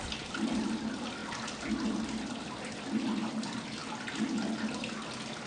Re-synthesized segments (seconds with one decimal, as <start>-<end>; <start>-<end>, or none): none